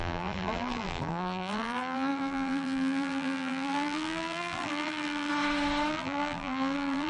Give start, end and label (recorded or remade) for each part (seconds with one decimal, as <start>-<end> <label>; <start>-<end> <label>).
0.0-5.3 remade; 5.3-5.9 recorded; 5.9-7.1 remade